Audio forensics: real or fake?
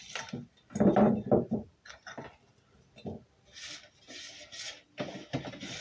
real